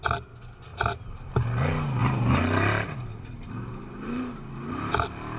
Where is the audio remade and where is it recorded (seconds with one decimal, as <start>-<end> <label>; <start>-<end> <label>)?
0.0-0.7 recorded; 0.7-1.3 remade; 1.3-2.0 recorded; 2.0-4.9 remade; 4.9-5.4 recorded